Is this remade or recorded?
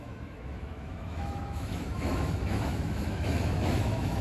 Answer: remade